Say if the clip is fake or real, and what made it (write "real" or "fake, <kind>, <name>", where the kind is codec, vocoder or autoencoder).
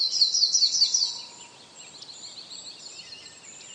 real